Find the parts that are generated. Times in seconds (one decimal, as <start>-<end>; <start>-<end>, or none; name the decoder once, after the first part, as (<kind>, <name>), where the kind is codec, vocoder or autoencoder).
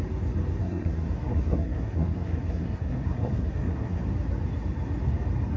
0.6-4.0 (codec, SNAC)